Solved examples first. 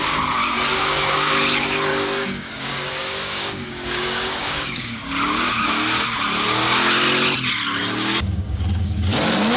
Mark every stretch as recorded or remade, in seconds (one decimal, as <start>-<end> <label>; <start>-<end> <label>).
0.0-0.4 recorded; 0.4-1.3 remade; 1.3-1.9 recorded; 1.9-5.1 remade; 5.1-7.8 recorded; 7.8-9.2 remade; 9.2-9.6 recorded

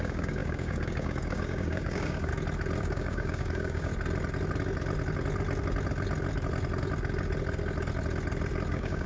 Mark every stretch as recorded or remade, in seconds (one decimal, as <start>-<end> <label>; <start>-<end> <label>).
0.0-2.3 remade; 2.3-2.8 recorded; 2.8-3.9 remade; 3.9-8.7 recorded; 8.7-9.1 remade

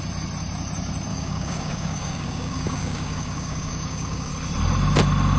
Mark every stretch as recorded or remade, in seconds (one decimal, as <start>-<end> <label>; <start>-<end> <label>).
0.0-1.1 recorded; 1.1-4.3 remade; 4.3-5.4 recorded

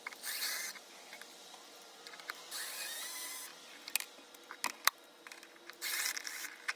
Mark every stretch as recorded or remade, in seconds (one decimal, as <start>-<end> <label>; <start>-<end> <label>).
0.0-6.8 recorded

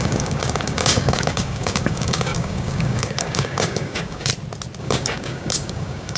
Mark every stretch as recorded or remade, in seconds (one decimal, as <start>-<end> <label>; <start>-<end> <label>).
0.0-4.3 remade; 4.3-4.8 recorded; 4.8-6.2 remade

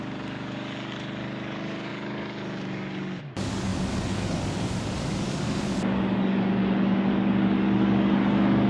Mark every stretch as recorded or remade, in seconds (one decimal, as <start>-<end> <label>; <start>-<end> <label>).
0.0-8.7 remade

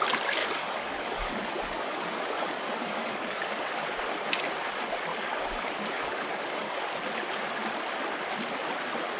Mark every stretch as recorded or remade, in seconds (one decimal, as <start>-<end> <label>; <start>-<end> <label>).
0.0-0.4 recorded; 0.4-3.5 remade; 3.5-5.1 recorded; 5.1-6.8 remade; 6.8-9.2 recorded

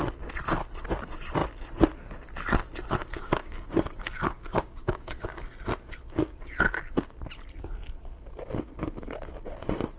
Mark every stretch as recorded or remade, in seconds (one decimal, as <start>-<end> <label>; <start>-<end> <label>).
0.0-3.0 recorded; 3.0-5.2 remade; 5.2-10.0 recorded